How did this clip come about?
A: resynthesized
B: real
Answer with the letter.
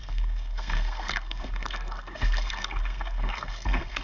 A